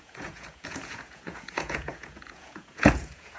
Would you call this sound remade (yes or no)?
yes